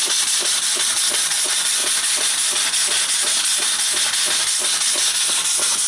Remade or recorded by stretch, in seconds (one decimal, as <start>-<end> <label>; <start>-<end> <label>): 0.0-1.8 remade; 1.8-5.3 recorded; 5.3-5.9 remade